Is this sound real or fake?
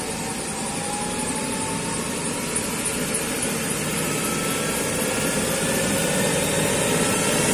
real